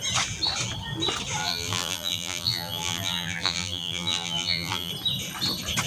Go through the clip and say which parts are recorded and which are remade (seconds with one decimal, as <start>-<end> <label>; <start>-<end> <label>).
0.0-1.4 recorded; 1.4-4.9 remade; 4.9-5.9 recorded